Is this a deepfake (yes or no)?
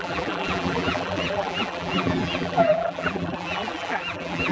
yes